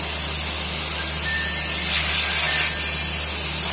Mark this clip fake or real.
real